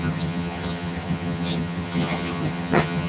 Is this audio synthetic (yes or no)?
yes